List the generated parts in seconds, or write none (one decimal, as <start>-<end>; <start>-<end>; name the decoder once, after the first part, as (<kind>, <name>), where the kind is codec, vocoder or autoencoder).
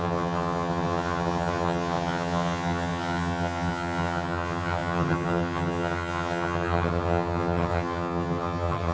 0.0-8.9 (vocoder, HiFi-GAN)